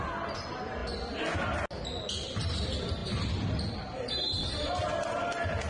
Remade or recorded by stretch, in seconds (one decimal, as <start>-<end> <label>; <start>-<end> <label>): 0.0-5.7 recorded